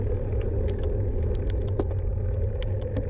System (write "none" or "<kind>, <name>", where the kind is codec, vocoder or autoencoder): none